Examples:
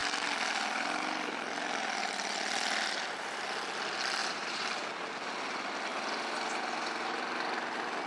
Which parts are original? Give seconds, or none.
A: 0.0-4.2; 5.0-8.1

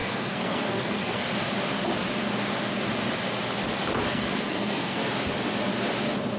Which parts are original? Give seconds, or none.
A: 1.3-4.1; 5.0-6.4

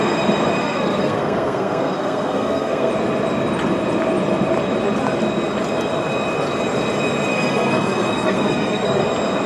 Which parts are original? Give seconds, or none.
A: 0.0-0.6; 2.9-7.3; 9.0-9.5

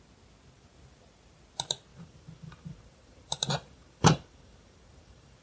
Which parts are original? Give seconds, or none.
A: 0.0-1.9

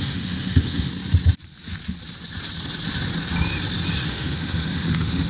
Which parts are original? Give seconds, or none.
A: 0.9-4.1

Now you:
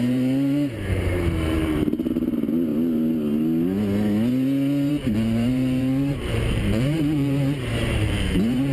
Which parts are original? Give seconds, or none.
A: 2.7-4.9

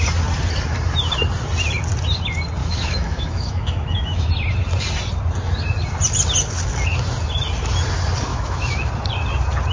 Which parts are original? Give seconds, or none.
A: 0.0-2.6; 4.3-8.3; 8.9-9.7

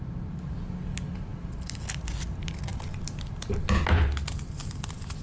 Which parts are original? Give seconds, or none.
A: 0.0-5.2